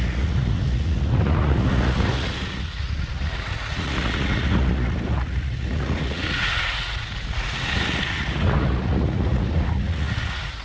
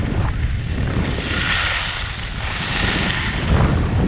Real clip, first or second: second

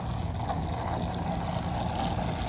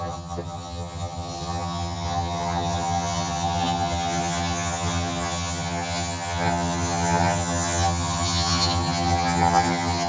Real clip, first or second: first